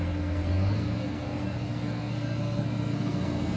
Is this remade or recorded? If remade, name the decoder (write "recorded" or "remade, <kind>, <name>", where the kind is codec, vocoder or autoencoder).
remade, codec, SNAC